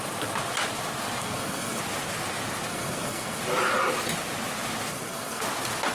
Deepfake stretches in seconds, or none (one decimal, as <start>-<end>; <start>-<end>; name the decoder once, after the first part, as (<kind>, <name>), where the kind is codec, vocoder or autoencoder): 1.2-1.8 (codec, SNAC); 2.7-3.4; 4.9-5.4